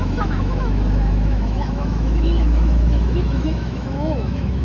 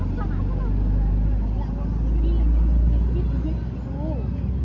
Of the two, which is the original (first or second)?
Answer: second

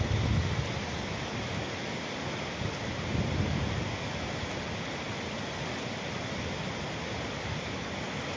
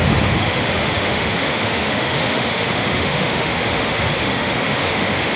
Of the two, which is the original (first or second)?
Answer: first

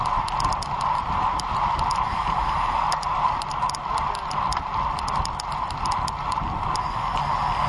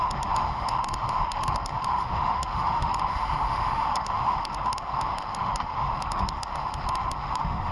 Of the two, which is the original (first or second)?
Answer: first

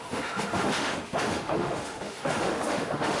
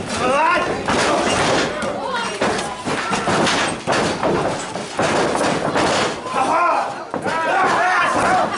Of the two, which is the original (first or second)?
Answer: second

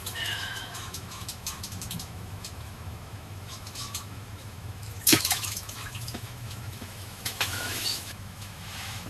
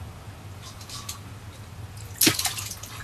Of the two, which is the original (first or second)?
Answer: second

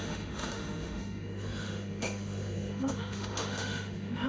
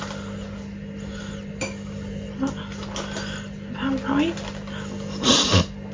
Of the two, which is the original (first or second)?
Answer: second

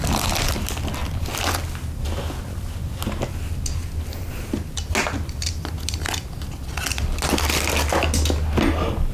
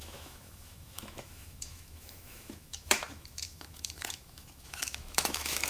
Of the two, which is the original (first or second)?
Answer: first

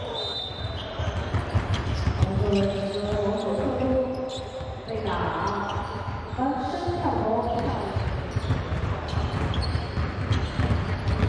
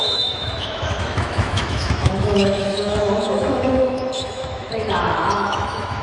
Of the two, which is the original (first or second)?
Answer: first